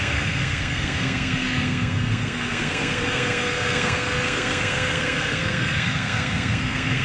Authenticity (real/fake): fake